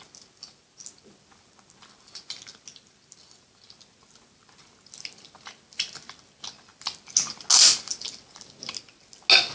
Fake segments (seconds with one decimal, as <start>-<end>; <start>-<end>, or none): none